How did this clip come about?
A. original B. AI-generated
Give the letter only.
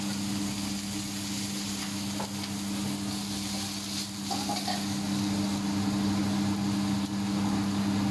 A